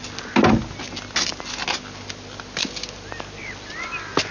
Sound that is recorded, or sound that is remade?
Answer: recorded